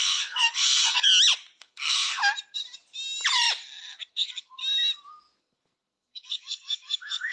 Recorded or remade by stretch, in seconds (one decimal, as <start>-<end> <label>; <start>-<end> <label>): 0.0-1.1 remade; 1.1-1.6 recorded; 1.6-2.2 remade; 2.2-4.1 recorded; 4.1-4.6 remade; 4.6-5.4 recorded; 5.4-7.3 remade